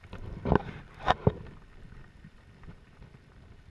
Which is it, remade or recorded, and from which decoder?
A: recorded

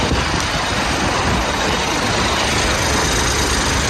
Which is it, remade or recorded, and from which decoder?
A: recorded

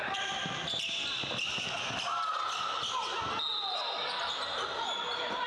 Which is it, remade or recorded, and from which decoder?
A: recorded